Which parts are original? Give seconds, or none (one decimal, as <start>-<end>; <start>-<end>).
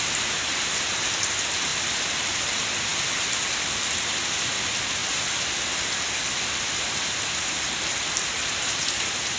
0.0-1.7; 2.4-2.9; 3.9-5.0; 5.6-9.4